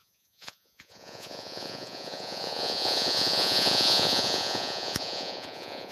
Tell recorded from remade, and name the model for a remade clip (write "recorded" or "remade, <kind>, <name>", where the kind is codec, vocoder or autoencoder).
remade, vocoder, Vocos